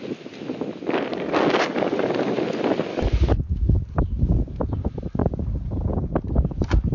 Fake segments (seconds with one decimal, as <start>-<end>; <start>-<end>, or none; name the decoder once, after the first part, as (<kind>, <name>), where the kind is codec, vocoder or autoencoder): 1.1-2.1 (codec, DAC); 2.9-4.6